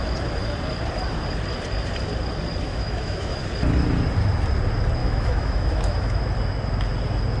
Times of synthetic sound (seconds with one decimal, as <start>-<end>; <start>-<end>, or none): 2.7-3.4; 5.0-6.2